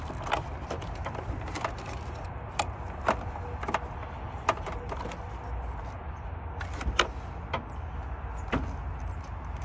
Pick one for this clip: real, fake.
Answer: real